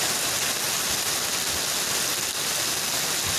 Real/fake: real